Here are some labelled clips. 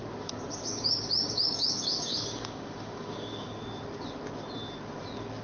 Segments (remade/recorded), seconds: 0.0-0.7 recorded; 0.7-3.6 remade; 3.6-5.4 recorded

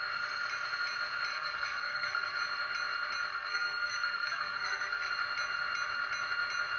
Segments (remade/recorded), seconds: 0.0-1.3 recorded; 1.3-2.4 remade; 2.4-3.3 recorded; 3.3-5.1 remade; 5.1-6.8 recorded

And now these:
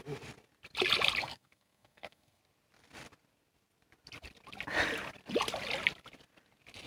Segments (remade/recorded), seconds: 0.0-1.2 recorded; 1.2-2.4 remade; 2.4-6.9 recorded

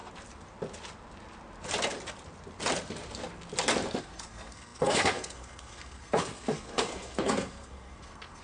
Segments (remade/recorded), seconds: 0.0-4.0 recorded; 4.0-8.4 remade

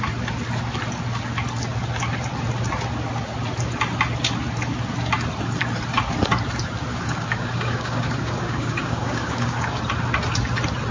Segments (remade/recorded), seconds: 0.0-6.9 recorded; 6.9-9.8 remade; 9.8-10.9 recorded

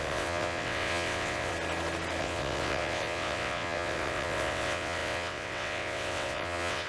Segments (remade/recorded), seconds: 0.0-1.5 remade; 1.5-2.2 recorded; 2.2-6.9 remade

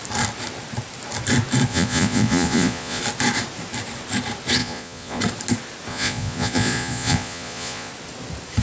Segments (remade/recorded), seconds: 0.0-1.7 recorded; 1.7-3.0 remade; 3.0-4.6 recorded; 4.6-5.2 remade; 5.2-5.9 recorded; 5.9-7.9 remade; 7.9-8.6 recorded